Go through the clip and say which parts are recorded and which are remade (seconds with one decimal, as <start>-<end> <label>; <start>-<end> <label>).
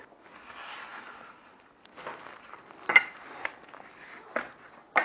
0.0-0.9 recorded; 0.9-3.9 remade; 3.9-5.0 recorded